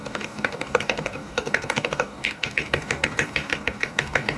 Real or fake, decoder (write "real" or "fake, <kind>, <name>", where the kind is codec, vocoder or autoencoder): fake, codec, DAC